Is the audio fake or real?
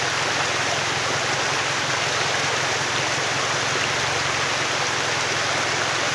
real